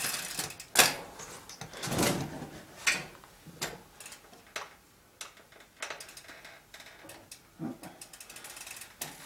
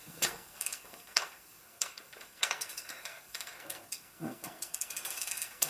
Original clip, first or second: first